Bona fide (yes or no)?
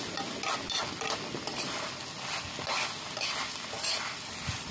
yes